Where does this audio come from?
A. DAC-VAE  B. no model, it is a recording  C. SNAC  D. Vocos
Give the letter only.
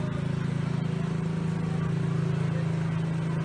B